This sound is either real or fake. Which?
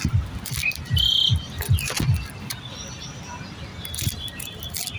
real